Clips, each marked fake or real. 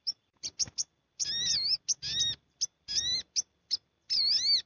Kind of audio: real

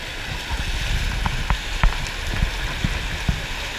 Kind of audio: real